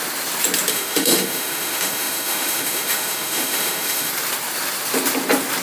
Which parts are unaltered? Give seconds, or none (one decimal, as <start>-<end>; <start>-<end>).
0.0-0.7; 4.1-5.6